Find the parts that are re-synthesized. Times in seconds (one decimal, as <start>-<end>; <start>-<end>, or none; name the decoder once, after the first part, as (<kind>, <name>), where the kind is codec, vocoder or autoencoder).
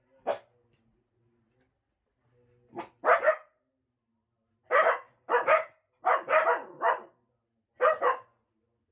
none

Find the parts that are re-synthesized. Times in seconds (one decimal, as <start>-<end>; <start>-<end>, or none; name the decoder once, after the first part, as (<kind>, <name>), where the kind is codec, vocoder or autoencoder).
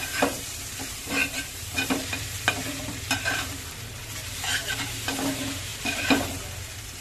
0.0-7.0 (vocoder, BigVGAN v2)